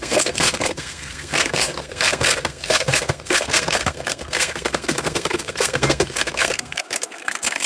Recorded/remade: remade